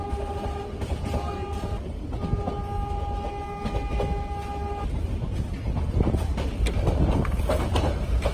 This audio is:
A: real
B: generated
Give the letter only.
A